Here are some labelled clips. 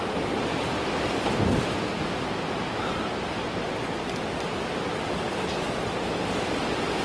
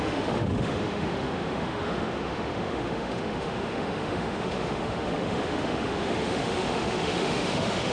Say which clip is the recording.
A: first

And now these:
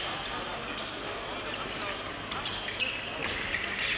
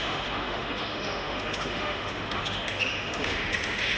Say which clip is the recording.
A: first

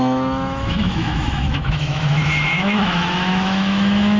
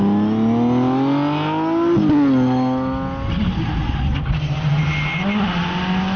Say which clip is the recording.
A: second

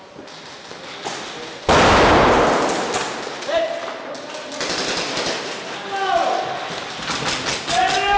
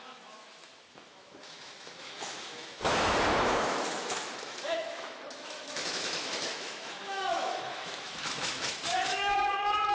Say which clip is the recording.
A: first